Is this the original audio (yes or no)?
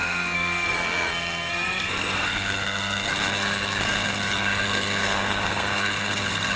no